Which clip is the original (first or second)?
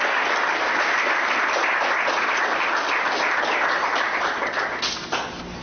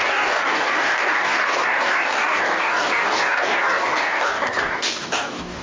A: first